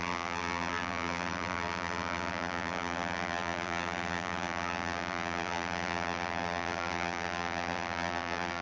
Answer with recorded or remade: remade